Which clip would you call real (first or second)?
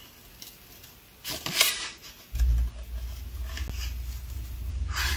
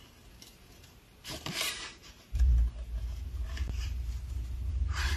first